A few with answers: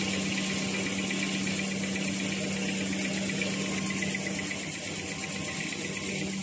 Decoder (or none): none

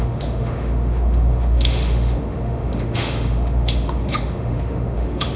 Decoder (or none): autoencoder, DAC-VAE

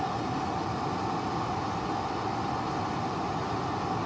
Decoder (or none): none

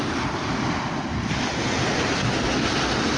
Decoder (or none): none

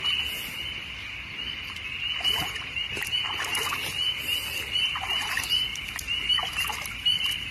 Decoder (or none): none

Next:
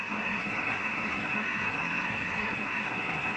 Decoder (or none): codec, SNAC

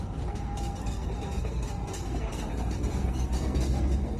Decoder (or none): codec, SNAC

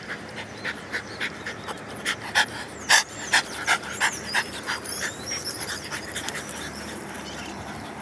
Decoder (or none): vocoder, BigVGAN v2